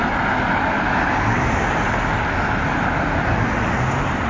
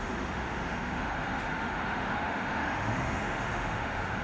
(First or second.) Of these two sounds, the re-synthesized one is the second